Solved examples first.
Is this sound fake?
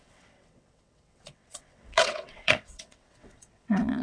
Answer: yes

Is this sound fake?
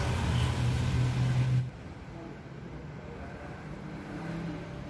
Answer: no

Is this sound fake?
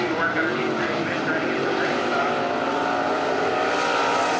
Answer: no